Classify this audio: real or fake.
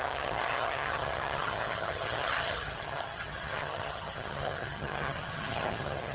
fake